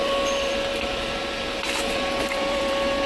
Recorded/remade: remade